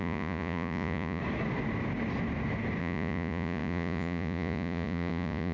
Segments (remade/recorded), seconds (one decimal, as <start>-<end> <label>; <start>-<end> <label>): 0.0-1.2 remade; 1.2-2.8 recorded; 2.8-5.5 remade